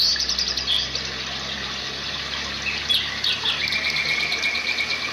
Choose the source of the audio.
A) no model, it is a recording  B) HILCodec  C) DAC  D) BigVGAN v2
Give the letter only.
A